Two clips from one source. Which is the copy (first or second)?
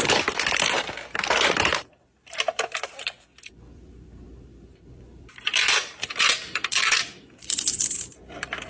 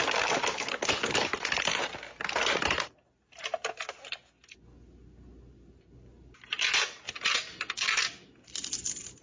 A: first